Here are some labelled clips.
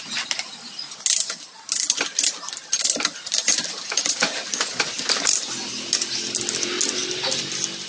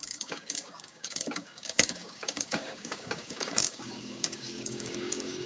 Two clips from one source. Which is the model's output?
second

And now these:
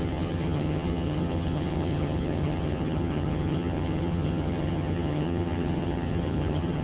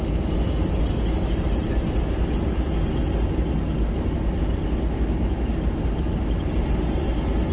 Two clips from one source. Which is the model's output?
first